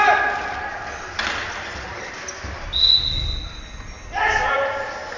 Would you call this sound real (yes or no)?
yes